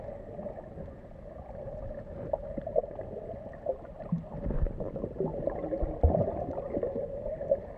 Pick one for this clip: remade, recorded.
recorded